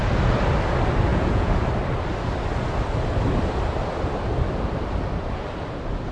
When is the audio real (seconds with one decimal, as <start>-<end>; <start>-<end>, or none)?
0.0-1.1; 1.6-6.1